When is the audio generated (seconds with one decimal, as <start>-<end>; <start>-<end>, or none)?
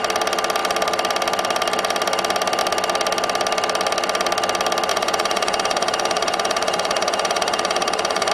4.9-8.3